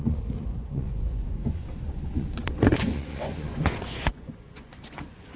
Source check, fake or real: fake